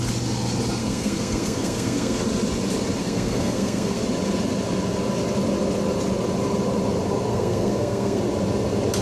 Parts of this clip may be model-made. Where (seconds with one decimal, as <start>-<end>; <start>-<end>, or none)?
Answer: 0.8-2.2; 3.0-4.0; 7.3-8.2

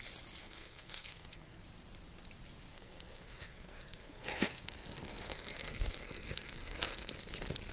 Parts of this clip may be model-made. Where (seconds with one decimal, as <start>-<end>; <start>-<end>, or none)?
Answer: 0.4-1.6; 2.7-7.1